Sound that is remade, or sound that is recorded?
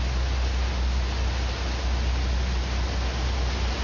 recorded